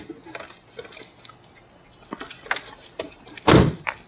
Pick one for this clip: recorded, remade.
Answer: recorded